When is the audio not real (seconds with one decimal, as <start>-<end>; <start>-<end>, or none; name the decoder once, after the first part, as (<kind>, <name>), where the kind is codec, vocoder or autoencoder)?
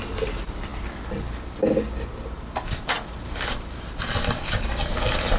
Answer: none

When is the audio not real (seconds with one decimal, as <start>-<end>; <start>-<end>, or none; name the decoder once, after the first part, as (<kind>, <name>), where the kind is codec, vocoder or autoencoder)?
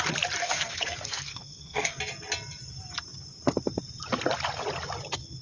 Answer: 0.4-2.0 (codec, SNAC)